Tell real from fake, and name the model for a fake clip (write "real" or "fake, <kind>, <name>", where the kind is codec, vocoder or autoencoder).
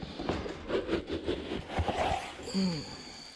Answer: real